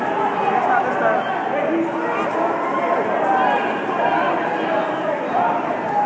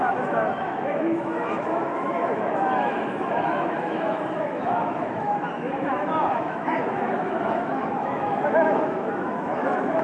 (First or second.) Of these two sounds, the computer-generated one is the second